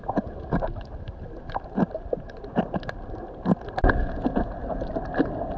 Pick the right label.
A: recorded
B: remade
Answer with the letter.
A